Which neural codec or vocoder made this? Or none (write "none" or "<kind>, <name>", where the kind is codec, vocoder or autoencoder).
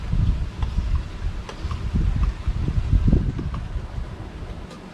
none